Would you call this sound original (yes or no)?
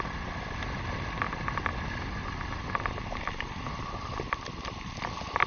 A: yes